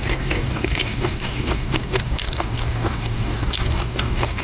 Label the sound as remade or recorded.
remade